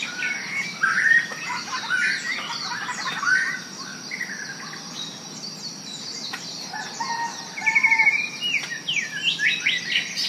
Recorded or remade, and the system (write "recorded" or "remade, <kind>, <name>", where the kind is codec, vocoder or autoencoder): recorded